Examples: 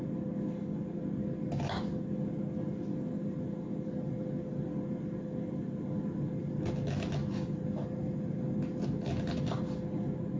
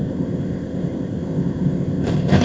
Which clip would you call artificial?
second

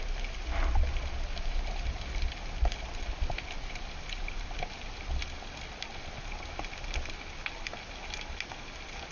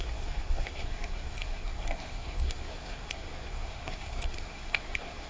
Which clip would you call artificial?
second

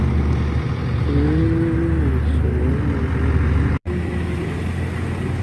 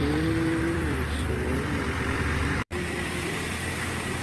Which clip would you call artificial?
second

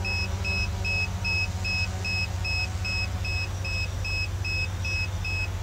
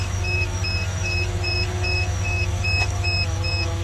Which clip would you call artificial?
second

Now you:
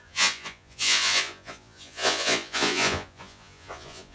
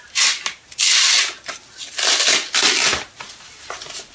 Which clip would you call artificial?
first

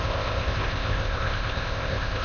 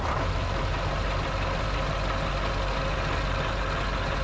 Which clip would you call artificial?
first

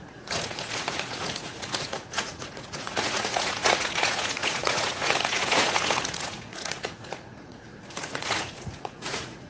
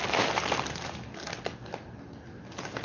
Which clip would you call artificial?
first